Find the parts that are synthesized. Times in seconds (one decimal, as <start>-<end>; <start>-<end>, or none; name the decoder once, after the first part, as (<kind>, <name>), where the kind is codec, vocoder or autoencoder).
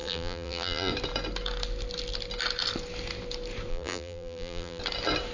0.0-0.9 (vocoder, BigVGAN v2); 3.7-4.8